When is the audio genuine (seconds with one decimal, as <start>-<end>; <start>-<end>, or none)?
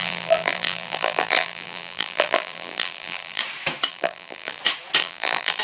3.4-3.9; 4.6-5.0